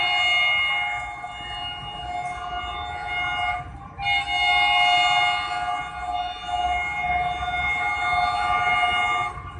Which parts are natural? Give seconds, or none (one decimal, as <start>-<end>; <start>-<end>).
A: 0.0-9.6